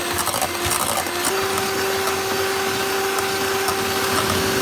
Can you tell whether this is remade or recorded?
recorded